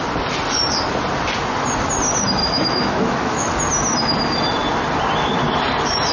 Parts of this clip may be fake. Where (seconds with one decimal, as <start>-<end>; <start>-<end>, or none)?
2.4-3.5